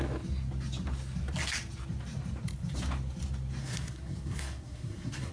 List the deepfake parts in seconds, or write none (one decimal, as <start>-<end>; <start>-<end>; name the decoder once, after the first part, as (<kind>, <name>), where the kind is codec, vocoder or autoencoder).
3.6-5.3 (codec, SNAC)